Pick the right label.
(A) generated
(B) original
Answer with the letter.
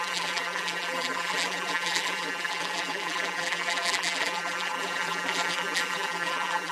A